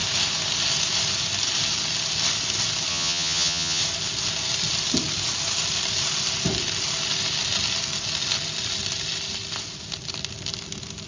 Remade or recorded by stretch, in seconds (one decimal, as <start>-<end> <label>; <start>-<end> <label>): 0.0-2.9 recorded; 2.9-3.8 remade; 3.8-11.1 recorded

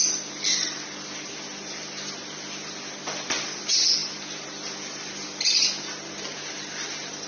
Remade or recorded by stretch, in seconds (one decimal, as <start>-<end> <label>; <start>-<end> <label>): 0.0-7.3 recorded